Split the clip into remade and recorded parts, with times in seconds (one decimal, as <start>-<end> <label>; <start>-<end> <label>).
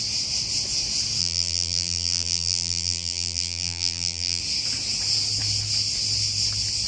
0.0-1.2 recorded; 1.2-4.4 remade; 4.4-6.9 recorded